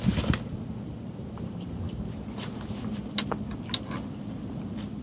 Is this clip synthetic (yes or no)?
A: no